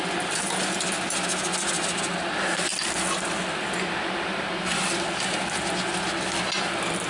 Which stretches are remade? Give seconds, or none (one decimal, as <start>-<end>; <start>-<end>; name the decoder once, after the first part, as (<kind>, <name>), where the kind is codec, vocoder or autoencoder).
none